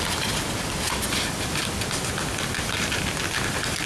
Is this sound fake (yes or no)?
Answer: no